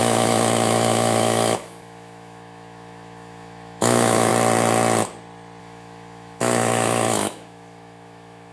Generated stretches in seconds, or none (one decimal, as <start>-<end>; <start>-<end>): 0.0-4.3; 5.6-8.5